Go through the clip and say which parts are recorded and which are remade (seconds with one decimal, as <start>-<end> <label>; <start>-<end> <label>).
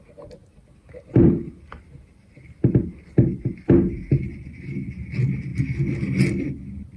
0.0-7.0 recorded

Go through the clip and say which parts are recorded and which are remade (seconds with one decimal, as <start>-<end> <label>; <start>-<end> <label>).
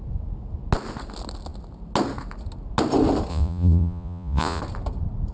0.0-3.3 recorded; 3.3-4.6 remade; 4.6-5.3 recorded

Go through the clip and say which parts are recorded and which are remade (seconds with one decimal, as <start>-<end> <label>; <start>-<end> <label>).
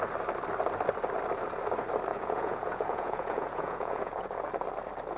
0.0-2.1 recorded; 2.1-4.2 remade; 4.2-5.2 recorded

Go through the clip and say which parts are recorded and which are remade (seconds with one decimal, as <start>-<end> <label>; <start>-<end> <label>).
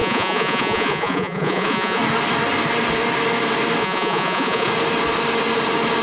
0.0-2.0 remade; 2.0-3.8 recorded; 3.8-4.7 remade; 4.7-6.0 recorded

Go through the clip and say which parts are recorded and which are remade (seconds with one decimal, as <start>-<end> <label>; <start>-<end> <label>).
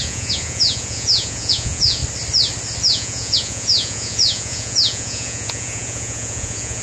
0.0-2.0 remade; 2.0-2.8 recorded; 2.8-6.8 remade